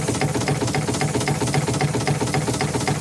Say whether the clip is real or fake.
real